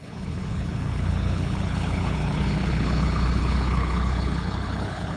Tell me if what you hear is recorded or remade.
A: remade